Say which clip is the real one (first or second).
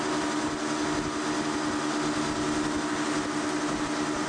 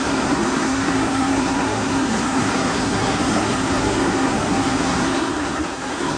first